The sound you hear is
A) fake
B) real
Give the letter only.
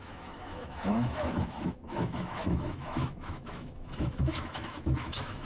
A